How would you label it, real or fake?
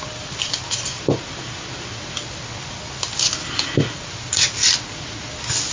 real